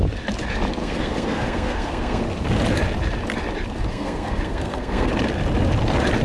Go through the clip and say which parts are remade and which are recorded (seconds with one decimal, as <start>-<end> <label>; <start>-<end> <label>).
0.0-0.8 recorded; 0.8-2.2 remade; 2.2-3.9 recorded; 3.9-5.1 remade; 5.1-6.2 recorded